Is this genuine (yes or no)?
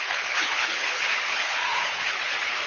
no